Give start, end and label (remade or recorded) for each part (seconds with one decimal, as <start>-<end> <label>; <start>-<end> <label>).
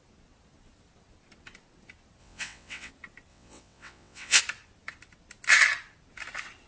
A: 0.0-2.2 recorded; 2.2-2.9 remade; 2.9-3.3 recorded; 3.3-4.4 remade; 4.4-6.7 recorded